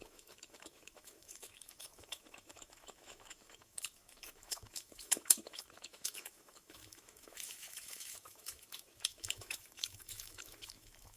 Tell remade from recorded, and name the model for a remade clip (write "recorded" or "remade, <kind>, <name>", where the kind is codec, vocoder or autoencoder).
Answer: remade, autoencoder, DAC-VAE